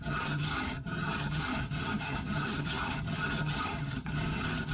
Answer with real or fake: fake